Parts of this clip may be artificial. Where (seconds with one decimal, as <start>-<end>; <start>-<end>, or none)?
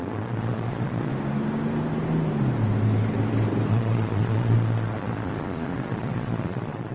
0.0-1.1; 3.7-6.9